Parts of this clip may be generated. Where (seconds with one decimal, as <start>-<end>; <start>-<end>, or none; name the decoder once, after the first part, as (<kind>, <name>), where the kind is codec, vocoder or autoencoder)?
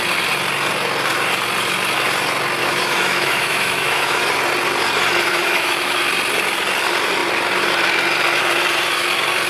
2.6-4.2 (autoencoder, DAC-VAE); 5.3-6.0